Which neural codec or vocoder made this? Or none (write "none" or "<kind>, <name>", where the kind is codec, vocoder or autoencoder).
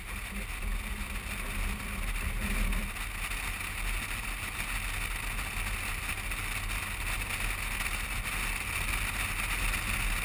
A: none